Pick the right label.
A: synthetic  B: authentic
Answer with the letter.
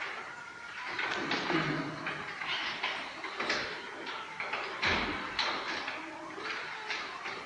A